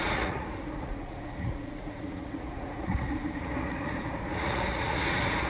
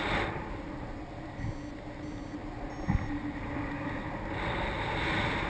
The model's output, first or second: first